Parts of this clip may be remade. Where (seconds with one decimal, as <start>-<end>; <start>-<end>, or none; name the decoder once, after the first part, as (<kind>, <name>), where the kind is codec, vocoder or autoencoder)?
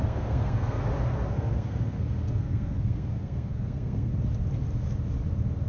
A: 0.0-0.8 (codec, SNAC); 1.3-4.1